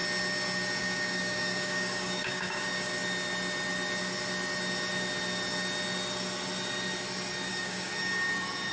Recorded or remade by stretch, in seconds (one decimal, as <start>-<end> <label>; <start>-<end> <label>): 0.0-0.8 recorded; 0.8-2.9 remade; 2.9-7.5 recorded; 7.5-7.9 remade; 7.9-8.7 recorded